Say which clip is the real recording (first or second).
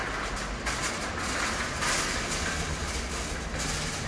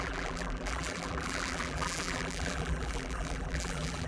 first